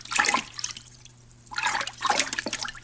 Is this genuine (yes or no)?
no